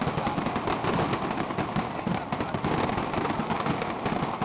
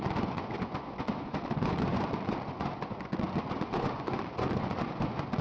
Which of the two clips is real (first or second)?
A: first